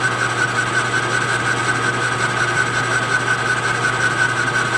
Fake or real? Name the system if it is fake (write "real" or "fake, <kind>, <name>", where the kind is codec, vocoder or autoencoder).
real